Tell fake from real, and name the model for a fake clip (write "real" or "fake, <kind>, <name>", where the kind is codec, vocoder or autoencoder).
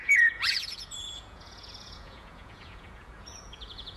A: fake, vocoder, Vocos